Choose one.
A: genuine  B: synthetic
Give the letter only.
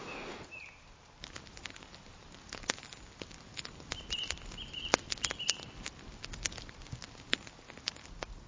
A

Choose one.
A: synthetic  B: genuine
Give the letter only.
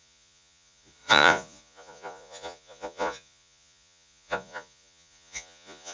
A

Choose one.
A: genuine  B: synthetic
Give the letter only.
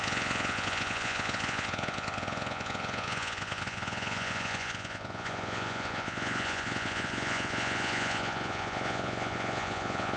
B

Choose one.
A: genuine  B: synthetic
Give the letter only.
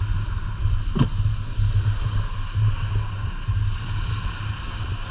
A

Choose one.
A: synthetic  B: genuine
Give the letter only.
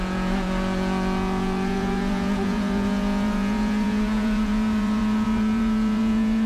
A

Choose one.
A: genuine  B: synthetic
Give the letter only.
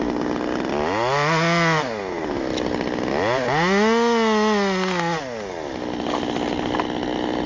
A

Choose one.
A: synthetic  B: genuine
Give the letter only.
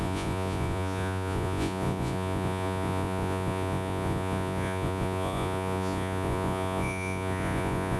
A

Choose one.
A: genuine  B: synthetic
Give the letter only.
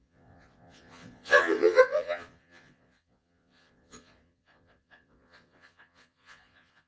B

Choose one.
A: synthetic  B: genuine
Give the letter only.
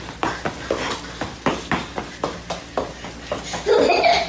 B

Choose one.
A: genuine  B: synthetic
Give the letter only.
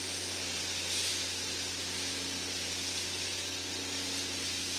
A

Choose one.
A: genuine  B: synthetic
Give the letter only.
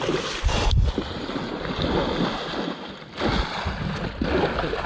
A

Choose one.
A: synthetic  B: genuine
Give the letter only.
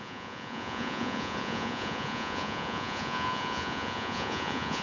A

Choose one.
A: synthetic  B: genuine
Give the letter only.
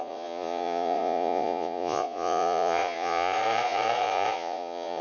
A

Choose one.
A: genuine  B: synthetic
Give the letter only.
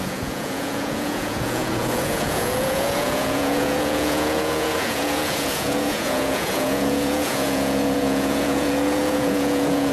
B